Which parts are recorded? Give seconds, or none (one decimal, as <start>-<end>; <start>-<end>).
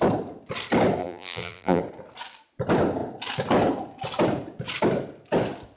0.0-1.0; 1.8-5.8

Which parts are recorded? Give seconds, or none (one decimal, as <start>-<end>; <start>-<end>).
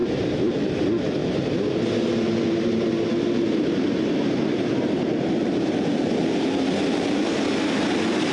0.5-1.2; 6.2-8.3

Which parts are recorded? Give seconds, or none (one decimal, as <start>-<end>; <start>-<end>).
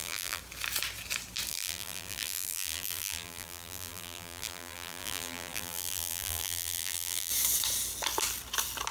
0.4-1.5; 7.3-8.9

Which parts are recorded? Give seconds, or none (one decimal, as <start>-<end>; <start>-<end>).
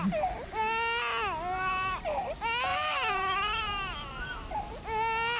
0.0-2.7; 4.6-5.4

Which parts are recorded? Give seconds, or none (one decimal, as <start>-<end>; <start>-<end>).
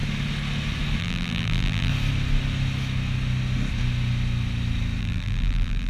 0.0-1.0; 1.9-5.0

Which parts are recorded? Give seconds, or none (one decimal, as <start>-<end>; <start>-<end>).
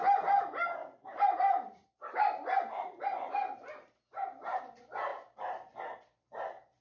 0.0-0.8; 4.6-5.1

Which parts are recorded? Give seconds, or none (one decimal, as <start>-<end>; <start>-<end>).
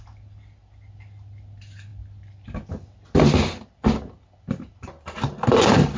0.0-6.0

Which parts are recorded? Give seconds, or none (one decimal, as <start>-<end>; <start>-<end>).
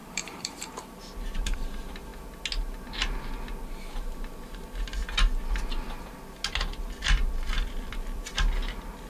0.8-7.5; 8.3-9.1